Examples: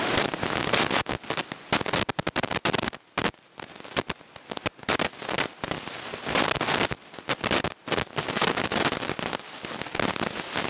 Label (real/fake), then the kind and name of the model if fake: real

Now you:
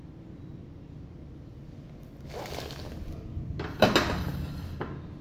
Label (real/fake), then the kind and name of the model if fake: real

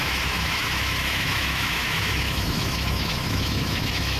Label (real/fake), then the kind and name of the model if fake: fake, autoencoder, DAC-VAE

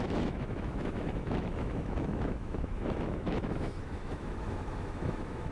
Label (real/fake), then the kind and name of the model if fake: fake, autoencoder, DAC-VAE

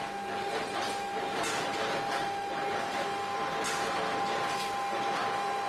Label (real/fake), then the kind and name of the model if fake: real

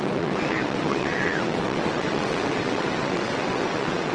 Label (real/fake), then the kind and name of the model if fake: fake, vocoder, WaveNeXt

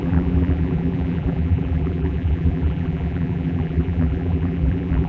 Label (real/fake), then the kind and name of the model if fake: fake, vocoder, BigVGAN v2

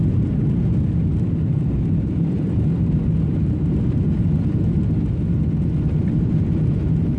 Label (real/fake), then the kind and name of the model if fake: real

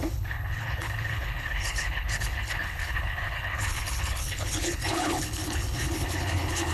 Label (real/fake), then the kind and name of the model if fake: fake, codec, HILCodec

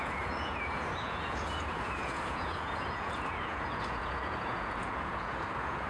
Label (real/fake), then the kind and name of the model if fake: fake, vocoder, Vocos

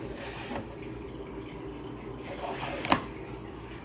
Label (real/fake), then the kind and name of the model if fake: real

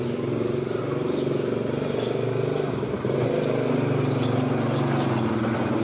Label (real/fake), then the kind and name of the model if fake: real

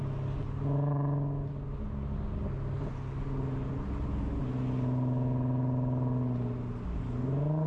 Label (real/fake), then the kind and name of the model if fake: real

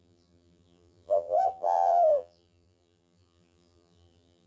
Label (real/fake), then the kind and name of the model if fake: fake, vocoder, BigVGAN v2